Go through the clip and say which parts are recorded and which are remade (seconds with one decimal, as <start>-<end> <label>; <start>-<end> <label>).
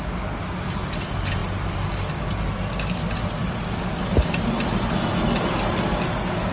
0.0-6.5 recorded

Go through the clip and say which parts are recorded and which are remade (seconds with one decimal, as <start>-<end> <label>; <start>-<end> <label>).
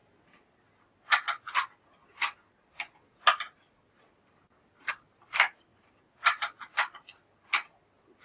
0.0-4.9 recorded; 4.9-5.7 remade; 5.7-8.2 recorded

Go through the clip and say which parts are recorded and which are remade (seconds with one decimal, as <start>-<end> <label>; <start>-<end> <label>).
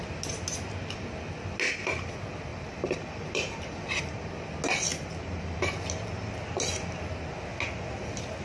0.0-2.5 recorded; 2.5-4.3 remade; 4.3-4.9 recorded; 4.9-5.6 remade; 5.6-8.4 recorded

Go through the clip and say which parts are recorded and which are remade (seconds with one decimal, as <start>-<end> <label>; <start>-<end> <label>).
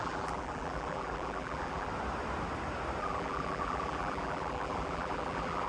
0.0-1.9 remade; 1.9-3.0 recorded; 3.0-5.7 remade